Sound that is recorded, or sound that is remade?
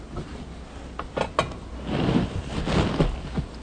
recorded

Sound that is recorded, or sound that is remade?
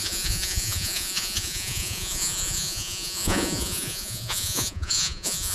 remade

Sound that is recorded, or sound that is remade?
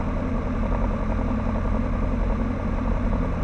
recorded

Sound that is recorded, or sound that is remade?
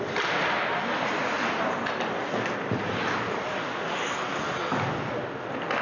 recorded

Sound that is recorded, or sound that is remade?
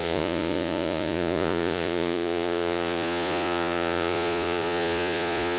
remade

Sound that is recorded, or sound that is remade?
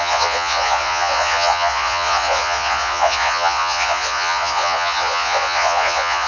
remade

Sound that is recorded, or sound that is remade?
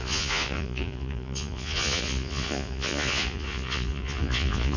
remade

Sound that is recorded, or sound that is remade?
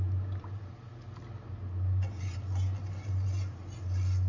recorded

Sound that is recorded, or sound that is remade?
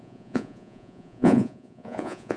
remade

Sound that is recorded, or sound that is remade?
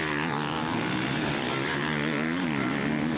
recorded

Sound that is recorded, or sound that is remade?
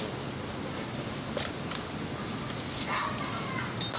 recorded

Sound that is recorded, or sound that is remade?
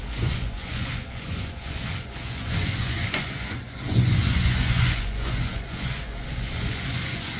remade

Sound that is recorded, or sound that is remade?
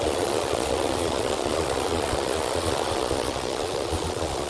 remade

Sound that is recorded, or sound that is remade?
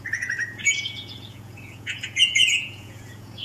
remade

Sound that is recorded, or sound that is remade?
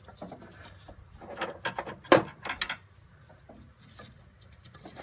recorded